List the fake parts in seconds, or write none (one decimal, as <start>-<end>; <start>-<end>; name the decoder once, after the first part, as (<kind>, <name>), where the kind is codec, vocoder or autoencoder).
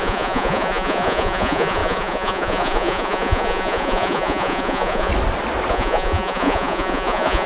0.0-5.1 (vocoder, Vocos); 5.7-7.5